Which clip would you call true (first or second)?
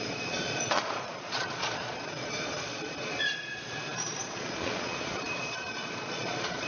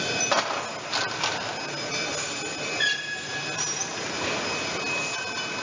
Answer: second